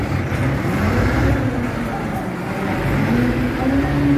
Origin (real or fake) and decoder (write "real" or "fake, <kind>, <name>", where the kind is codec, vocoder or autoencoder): real